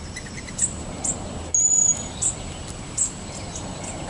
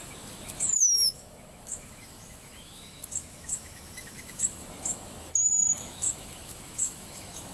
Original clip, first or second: first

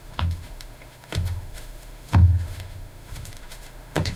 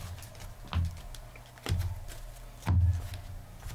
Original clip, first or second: second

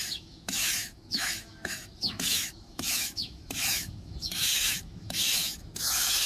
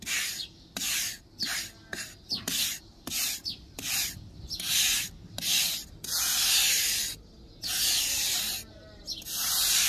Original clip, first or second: second